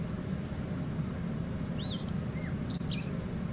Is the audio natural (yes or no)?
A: yes